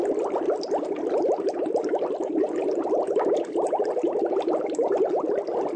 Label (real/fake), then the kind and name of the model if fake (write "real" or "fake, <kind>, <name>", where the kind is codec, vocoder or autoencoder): real